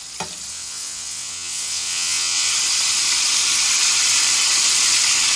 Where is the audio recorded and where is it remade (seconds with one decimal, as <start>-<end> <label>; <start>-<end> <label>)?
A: 0.0-0.5 recorded; 0.5-2.5 remade; 2.5-5.4 recorded